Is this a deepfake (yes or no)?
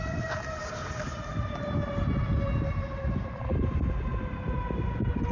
no